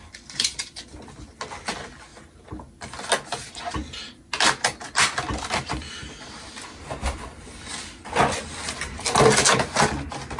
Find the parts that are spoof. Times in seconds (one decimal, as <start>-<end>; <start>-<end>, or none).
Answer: 2.1-2.7